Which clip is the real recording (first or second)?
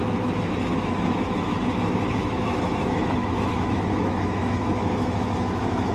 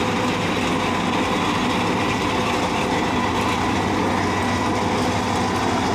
second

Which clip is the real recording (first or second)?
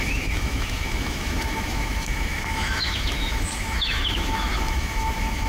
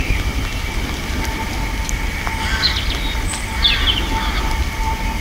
second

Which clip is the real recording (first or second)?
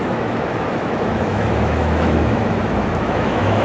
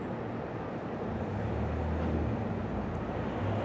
second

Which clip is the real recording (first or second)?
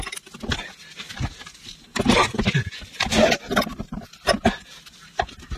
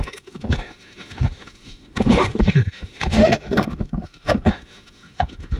first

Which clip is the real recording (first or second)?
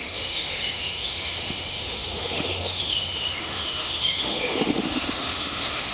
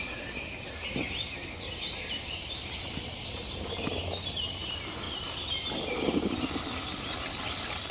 second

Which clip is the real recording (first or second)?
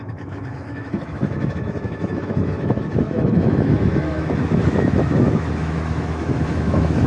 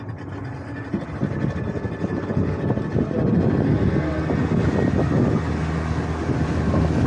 second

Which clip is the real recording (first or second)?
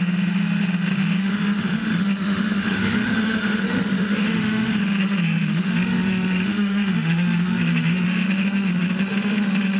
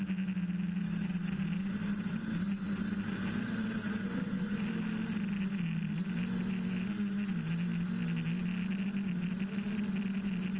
second